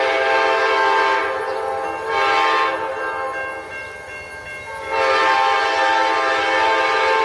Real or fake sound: real